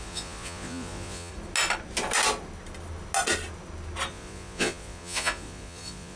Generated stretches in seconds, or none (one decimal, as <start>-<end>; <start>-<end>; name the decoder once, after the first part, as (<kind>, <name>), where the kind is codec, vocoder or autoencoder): 0.0-1.3 (vocoder, Vocos); 4.1-6.2